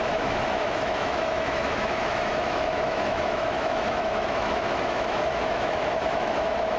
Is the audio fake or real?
fake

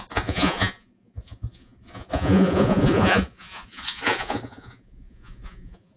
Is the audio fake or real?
fake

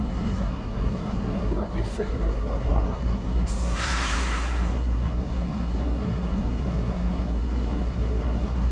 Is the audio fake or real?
fake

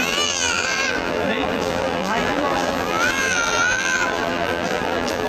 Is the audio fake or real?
fake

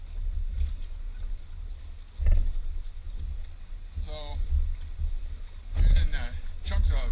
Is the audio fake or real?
real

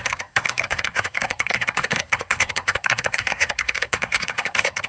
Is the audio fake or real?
fake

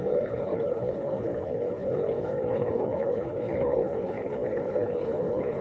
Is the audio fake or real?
fake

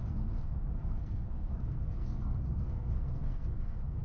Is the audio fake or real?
fake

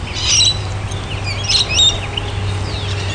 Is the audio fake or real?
real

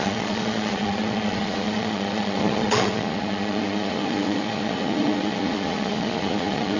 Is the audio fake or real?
fake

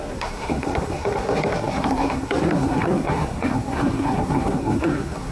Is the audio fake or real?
fake